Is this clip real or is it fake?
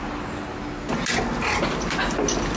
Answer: real